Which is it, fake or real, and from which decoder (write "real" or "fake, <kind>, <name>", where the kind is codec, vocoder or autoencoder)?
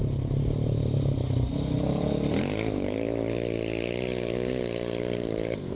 fake, vocoder, BigVGAN v2